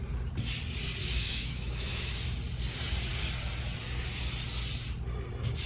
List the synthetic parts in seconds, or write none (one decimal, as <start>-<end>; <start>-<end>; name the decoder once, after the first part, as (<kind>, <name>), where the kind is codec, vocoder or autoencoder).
1.0-2.1 (autoencoder, DAC-VAE)